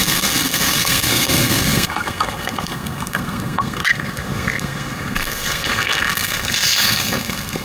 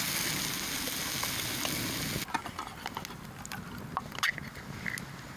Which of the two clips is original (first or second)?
second